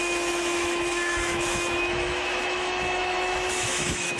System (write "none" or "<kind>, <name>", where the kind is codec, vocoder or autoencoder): autoencoder, DAC-VAE